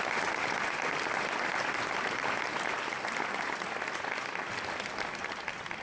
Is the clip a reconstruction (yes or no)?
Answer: no